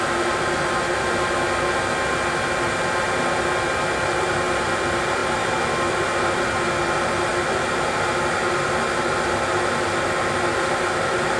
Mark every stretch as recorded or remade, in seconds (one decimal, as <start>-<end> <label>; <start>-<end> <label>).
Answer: 0.0-11.4 recorded

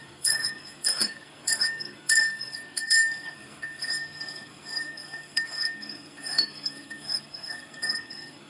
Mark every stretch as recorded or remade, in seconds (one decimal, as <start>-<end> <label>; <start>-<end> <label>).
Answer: 0.0-8.5 remade

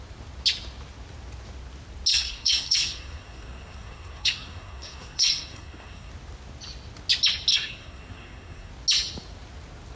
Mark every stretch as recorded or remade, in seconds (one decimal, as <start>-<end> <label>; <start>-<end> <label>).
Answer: 0.0-2.1 recorded; 2.1-6.1 remade; 6.1-7.5 recorded; 7.5-8.7 remade; 8.7-10.0 recorded